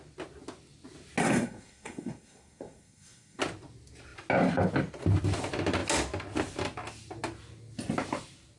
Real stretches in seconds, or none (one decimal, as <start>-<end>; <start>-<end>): 0.0-1.2; 3.4-8.6